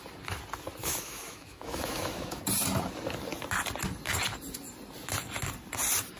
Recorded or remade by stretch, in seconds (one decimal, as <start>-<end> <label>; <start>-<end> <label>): 0.0-0.8 recorded; 0.8-2.4 remade; 2.4-6.2 recorded